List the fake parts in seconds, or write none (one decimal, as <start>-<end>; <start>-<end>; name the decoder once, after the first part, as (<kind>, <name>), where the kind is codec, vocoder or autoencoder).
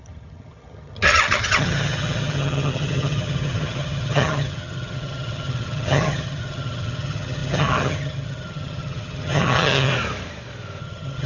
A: 0.0-9.9 (vocoder, HiFi-GAN); 10.8-11.3